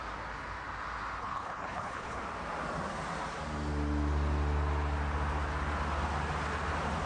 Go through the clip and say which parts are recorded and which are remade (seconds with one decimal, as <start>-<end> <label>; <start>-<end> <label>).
0.0-1.2 recorded; 1.2-2.2 remade; 2.2-7.1 recorded